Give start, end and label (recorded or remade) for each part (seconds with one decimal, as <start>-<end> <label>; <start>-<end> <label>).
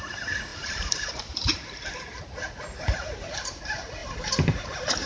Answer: 0.0-0.5 recorded; 0.5-3.6 remade; 3.6-4.0 recorded; 4.0-5.1 remade